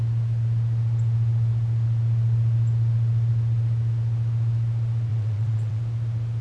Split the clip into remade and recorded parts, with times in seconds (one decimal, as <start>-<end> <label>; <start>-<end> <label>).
0.0-5.1 recorded; 5.1-5.8 remade; 5.8-6.4 recorded